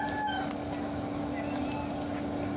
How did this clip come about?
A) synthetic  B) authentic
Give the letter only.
B